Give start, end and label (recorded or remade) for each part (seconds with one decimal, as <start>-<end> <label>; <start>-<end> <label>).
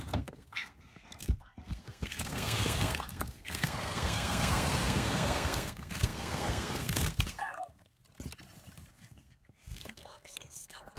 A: 0.0-8.0 remade; 8.0-8.9 recorded; 8.9-11.0 remade